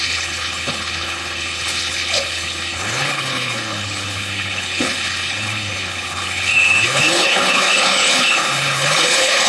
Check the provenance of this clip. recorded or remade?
remade